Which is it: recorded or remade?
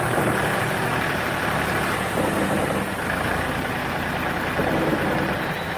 recorded